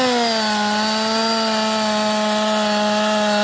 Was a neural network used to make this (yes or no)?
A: no